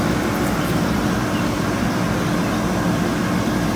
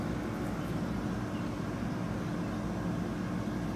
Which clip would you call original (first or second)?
second